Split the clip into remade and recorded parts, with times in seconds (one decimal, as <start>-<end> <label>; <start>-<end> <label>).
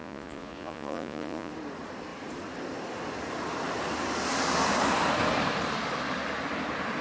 0.0-1.5 remade; 1.5-7.0 recorded